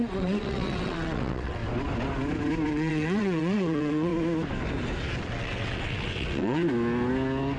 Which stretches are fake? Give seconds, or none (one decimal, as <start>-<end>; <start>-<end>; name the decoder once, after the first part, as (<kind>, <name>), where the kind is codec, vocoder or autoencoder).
0.0-1.6 (vocoder, WaveNeXt); 2.7-4.1; 5.2-6.6